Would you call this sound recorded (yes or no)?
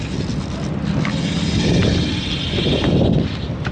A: yes